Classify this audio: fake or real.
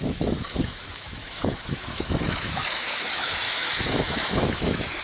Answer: fake